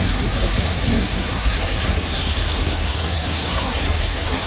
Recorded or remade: remade